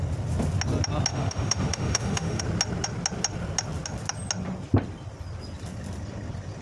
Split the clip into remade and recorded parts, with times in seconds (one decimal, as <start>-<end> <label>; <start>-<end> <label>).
0.0-1.1 recorded; 1.1-2.4 remade; 2.4-6.6 recorded